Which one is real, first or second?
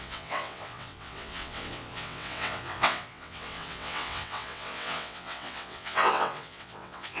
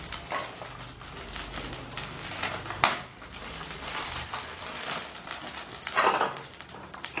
second